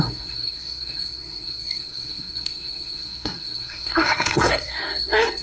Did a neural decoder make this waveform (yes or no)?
yes